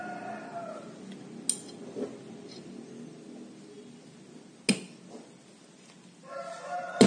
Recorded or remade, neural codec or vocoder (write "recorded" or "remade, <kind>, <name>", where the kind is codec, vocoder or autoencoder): recorded